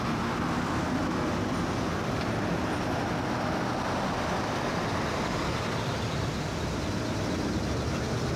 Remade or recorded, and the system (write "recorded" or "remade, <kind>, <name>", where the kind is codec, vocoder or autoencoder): recorded